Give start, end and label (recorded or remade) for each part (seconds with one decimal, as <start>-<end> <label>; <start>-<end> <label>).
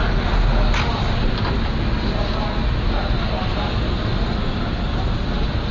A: 0.0-5.7 recorded